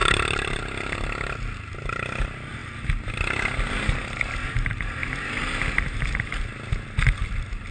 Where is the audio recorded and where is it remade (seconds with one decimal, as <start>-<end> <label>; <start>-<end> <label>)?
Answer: 0.0-0.6 remade; 0.6-5.0 recorded; 5.0-6.7 remade; 6.7-7.7 recorded